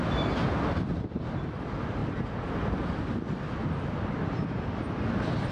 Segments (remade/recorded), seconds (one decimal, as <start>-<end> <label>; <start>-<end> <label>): 0.0-5.5 recorded